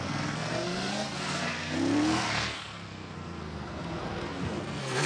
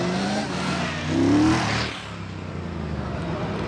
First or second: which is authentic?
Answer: second